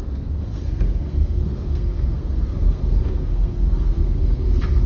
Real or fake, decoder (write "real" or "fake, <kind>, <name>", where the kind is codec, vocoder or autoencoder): fake, codec, SNAC